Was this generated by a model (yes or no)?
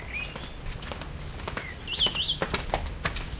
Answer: no